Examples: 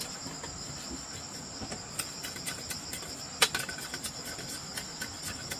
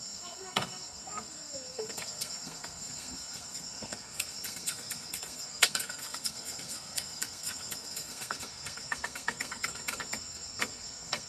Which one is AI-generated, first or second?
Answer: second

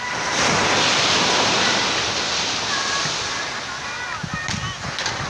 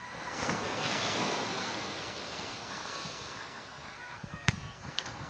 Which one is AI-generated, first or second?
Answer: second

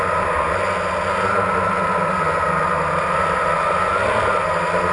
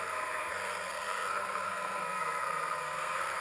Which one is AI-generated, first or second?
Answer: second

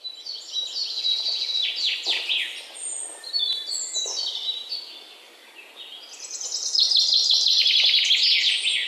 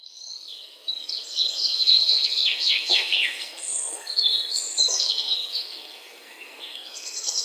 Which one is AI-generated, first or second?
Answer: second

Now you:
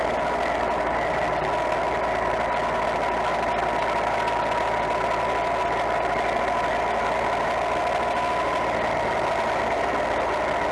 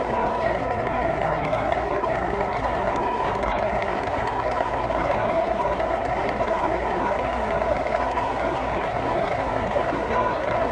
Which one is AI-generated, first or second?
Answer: second